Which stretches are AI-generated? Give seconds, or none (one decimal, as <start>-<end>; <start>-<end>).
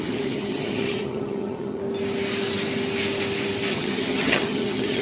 0.0-1.8; 3.7-5.0